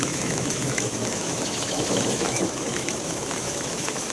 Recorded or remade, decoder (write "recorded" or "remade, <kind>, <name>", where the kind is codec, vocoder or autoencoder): remade, autoencoder, DAC-VAE